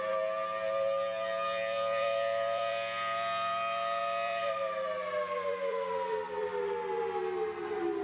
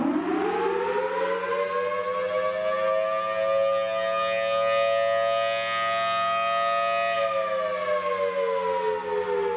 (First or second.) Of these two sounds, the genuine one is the second